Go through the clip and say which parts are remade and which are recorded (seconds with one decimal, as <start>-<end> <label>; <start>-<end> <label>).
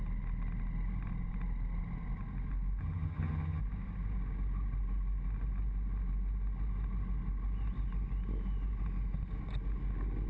0.0-2.8 recorded; 2.8-3.6 remade; 3.6-10.3 recorded